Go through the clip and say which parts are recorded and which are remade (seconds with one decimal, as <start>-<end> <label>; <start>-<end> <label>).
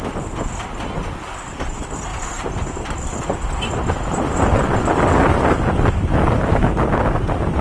0.0-2.1 recorded; 2.1-3.1 remade; 3.1-7.6 recorded